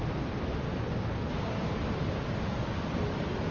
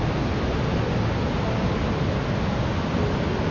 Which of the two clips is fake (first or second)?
first